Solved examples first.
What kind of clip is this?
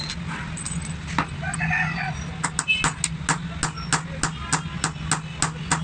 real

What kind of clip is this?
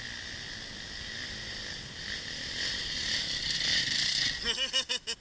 real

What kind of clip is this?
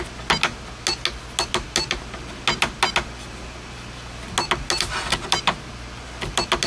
real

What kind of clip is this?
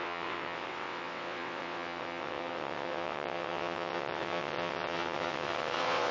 fake